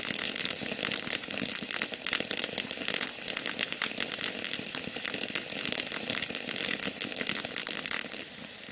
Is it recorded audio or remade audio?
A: recorded